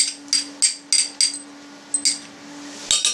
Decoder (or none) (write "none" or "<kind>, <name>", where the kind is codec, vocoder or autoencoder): none